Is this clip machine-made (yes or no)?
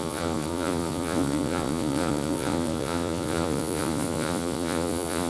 yes